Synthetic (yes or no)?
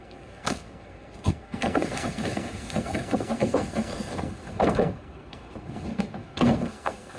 yes